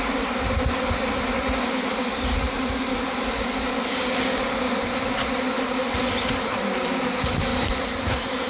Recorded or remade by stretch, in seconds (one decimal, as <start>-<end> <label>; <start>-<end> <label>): 0.0-7.5 recorded; 7.5-8.1 remade; 8.1-8.5 recorded